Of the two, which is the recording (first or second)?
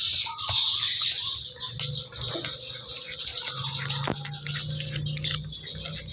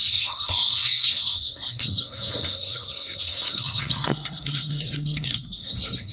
first